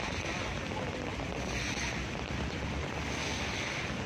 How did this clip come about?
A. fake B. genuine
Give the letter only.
B